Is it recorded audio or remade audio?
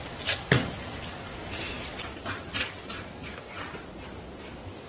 remade